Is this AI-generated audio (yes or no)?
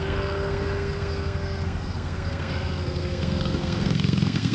yes